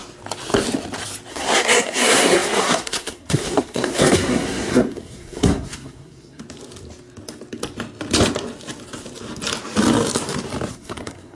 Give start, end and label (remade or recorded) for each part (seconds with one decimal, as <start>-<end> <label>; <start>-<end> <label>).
0.0-1.3 recorded; 1.3-6.4 remade; 6.4-10.7 recorded; 10.7-11.3 remade